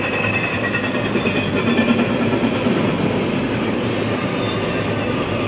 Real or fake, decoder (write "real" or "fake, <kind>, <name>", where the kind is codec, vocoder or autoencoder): real